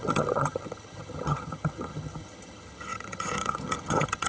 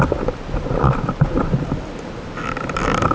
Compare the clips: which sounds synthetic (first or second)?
first